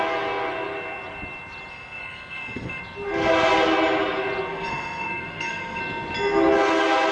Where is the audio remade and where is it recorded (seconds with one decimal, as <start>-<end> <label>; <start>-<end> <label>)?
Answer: 0.0-1.7 recorded; 1.7-2.8 remade; 2.8-4.5 recorded; 4.5-5.8 remade; 5.8-7.1 recorded